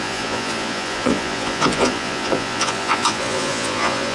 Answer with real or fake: fake